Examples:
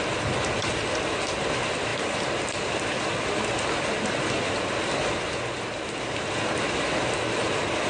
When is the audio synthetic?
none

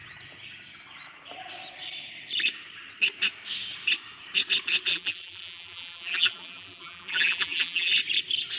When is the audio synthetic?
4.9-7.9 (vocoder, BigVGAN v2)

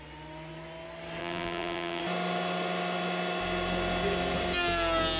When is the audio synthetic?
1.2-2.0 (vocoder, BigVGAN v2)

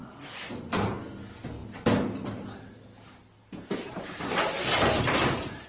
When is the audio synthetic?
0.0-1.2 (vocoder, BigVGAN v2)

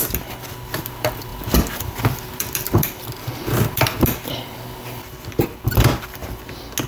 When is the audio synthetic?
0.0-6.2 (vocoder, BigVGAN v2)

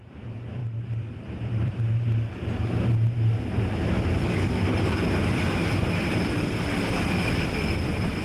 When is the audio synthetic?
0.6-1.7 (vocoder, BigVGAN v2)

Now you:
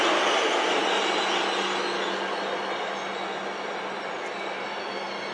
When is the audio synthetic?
none